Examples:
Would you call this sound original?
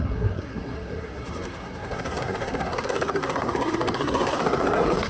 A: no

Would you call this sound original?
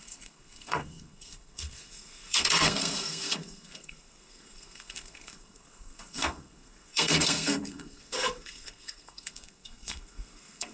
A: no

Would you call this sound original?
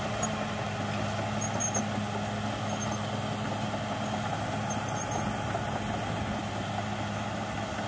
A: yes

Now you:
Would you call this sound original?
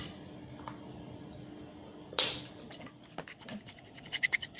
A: yes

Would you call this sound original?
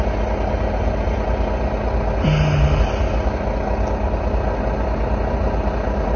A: yes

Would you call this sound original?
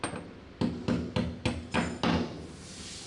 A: yes